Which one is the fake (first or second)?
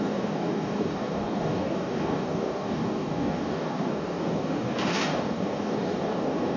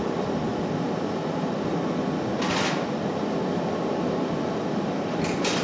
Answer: first